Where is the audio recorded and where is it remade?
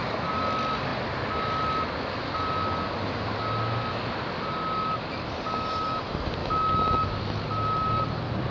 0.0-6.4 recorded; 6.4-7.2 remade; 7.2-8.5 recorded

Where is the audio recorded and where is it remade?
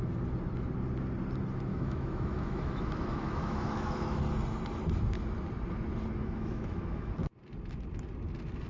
0.0-1.7 recorded; 1.7-4.2 remade; 4.2-6.2 recorded; 6.2-7.1 remade; 7.1-8.7 recorded